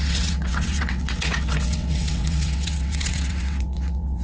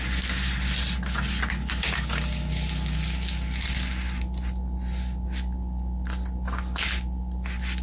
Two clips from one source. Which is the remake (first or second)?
first